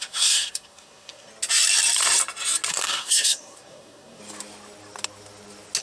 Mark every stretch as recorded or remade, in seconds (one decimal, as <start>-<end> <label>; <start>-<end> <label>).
0.0-1.3 remade; 1.3-2.7 recorded; 2.7-4.2 remade; 4.2-5.8 recorded